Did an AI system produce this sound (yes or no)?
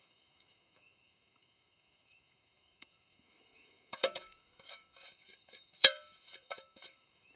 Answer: yes